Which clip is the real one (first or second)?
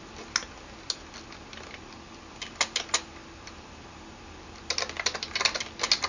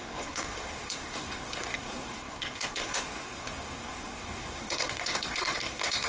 first